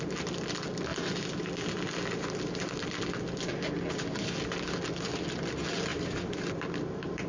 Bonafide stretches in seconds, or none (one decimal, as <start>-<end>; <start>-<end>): 0.0-5.9